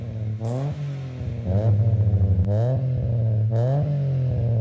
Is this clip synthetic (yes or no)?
no